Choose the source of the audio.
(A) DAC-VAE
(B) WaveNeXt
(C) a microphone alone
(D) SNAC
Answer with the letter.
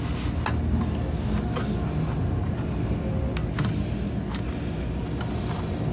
C